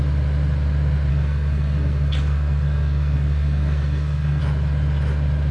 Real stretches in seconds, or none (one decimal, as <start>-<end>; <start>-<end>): 0.0-1.1; 4.4-5.5